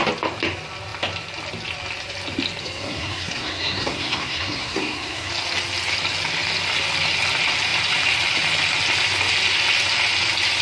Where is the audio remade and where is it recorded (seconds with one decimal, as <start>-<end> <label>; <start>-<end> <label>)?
0.0-2.6 recorded; 2.6-5.3 remade; 5.3-10.6 recorded